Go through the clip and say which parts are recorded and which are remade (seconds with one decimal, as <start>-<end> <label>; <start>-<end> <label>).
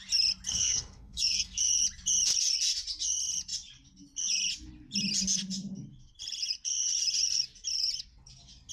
0.0-0.5 recorded; 0.5-1.6 remade; 1.6-8.7 recorded